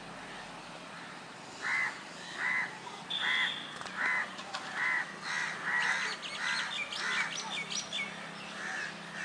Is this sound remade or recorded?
recorded